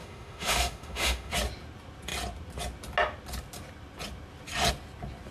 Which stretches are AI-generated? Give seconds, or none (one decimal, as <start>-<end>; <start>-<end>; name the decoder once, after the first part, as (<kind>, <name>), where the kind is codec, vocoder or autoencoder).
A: 0.0-1.3 (autoencoder, DAC-VAE)